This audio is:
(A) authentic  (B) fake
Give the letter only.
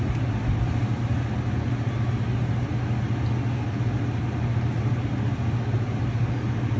A